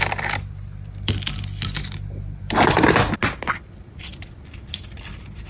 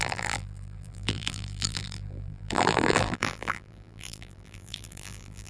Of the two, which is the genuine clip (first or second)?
first